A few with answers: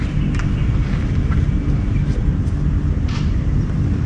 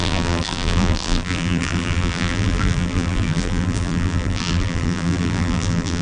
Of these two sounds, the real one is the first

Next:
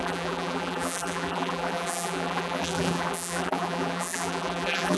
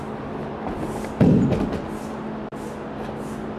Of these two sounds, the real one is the second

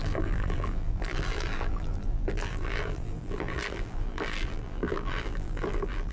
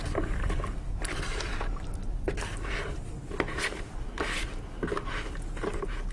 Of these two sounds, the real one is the second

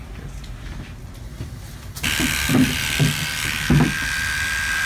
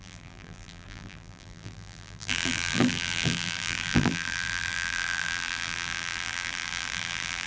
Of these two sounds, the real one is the first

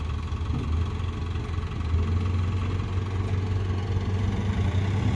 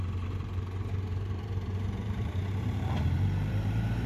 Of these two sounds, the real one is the first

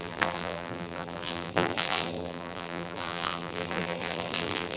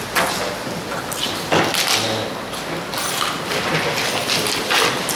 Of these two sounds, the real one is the second